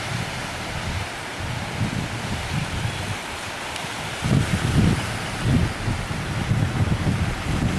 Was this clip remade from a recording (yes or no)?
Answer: no